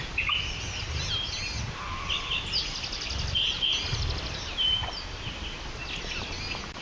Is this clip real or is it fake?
real